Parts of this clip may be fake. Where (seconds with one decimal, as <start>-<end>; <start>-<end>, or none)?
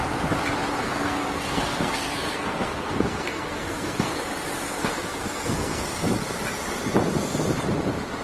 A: 0.8-4.2; 4.8-5.8